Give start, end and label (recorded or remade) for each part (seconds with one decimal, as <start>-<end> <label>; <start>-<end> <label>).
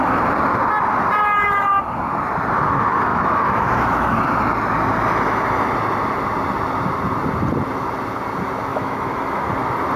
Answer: 0.0-3.1 recorded; 3.1-4.1 remade; 4.1-8.7 recorded; 8.7-9.5 remade; 9.5-10.0 recorded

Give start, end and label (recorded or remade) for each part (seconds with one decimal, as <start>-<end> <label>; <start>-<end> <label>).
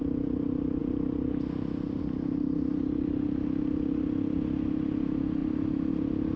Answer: 0.0-6.4 recorded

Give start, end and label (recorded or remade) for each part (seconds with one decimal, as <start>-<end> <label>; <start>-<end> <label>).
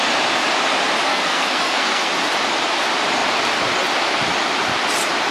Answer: 0.0-1.1 recorded; 1.1-2.1 remade; 2.1-5.3 recorded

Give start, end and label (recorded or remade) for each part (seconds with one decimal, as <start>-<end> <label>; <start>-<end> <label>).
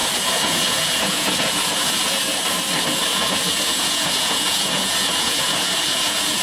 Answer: 0.0-2.2 remade; 2.2-3.1 recorded; 3.1-6.4 remade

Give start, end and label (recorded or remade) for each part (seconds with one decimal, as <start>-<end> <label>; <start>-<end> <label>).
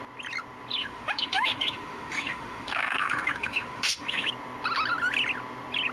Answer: 0.0-0.8 recorded; 0.8-4.3 remade; 4.3-5.9 recorded